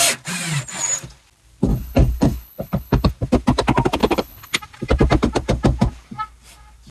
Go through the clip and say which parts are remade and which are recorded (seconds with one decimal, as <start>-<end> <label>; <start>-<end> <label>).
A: 0.0-1.7 recorded; 1.7-3.1 remade; 3.1-4.0 recorded; 4.0-4.6 remade; 4.6-6.9 recorded